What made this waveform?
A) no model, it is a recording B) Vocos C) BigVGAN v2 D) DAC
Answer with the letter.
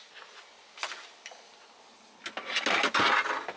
A